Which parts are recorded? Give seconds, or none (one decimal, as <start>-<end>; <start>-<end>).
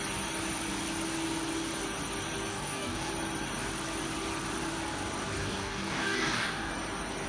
0.0-2.5; 3.1-5.4; 6.7-7.3